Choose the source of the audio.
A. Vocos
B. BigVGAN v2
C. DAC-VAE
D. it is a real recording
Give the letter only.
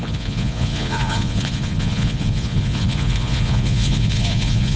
A